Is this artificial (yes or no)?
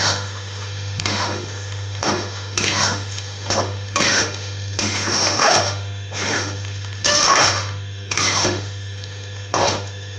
yes